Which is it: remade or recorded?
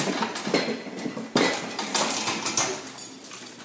recorded